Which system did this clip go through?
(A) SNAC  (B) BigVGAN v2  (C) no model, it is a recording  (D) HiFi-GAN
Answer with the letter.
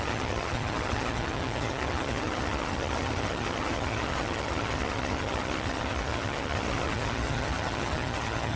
D